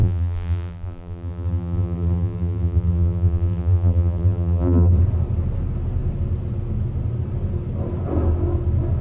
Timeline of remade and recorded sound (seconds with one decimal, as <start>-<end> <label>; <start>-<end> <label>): 0.0-4.9 remade; 4.9-9.0 recorded